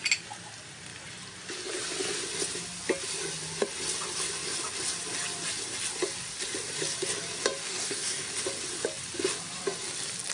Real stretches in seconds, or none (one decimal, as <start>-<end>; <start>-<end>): 0.0-7.6; 8.3-10.3